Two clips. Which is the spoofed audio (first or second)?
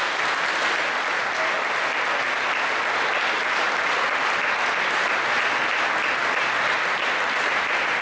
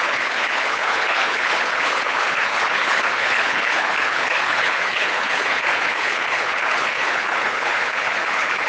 second